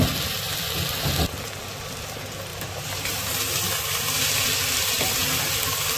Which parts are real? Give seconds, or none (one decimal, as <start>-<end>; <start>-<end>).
0.0-2.5; 3.4-6.0